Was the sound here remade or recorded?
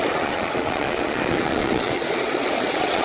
remade